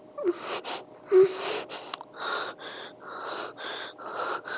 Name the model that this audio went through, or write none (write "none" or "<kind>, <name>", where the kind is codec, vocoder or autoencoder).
none